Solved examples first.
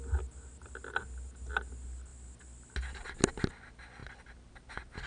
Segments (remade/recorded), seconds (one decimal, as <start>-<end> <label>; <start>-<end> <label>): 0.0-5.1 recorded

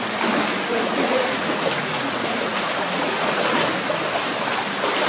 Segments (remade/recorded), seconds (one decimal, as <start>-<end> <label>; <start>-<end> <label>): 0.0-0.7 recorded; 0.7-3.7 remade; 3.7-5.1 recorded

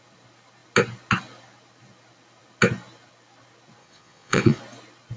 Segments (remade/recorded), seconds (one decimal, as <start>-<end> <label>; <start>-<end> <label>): 0.0-3.8 recorded; 3.8-4.6 remade; 4.6-5.2 recorded

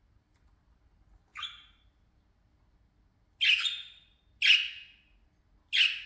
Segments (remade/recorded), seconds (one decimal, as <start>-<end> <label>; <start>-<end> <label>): 0.0-6.1 recorded

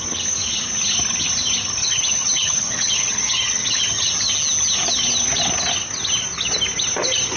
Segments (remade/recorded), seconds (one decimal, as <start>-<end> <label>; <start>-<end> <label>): 0.0-1.8 recorded; 1.8-4.1 remade; 4.1-7.4 recorded

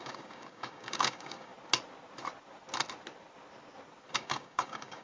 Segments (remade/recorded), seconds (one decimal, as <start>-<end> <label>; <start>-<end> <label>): 0.0-1.5 remade; 1.5-4.1 recorded; 4.1-5.0 remade

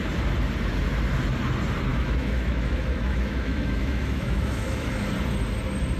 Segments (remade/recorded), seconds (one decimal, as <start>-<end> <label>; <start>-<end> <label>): 0.0-1.9 recorded; 1.9-4.9 remade; 4.9-6.0 recorded